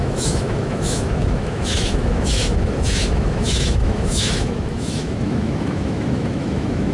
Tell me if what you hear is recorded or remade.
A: remade